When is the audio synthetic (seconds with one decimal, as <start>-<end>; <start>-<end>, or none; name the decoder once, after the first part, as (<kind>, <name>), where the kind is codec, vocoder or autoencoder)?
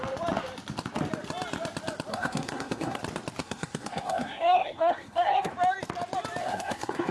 2.1-3.0 (codec, SNAC); 3.4-5.5; 6.4-7.1